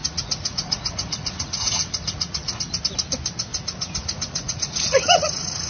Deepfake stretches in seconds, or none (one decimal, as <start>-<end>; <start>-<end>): 0.0-2.6; 3.5-5.7